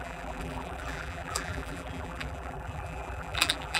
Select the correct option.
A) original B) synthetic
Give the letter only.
B